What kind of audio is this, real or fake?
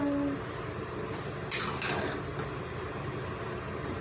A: real